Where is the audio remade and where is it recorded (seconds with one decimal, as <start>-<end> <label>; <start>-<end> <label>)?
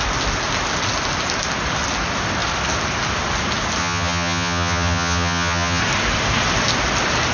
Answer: 0.0-3.8 recorded; 3.8-5.8 remade; 5.8-7.3 recorded